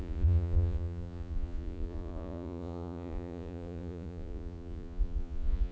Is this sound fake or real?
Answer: fake